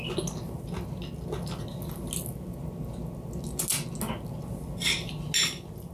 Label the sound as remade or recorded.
recorded